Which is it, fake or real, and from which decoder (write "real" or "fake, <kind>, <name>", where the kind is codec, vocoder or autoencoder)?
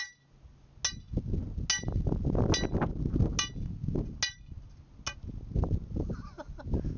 real